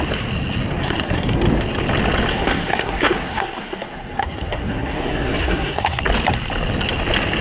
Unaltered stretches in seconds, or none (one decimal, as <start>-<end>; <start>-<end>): 0.0-0.8; 1.4-2.3; 6.0-7.4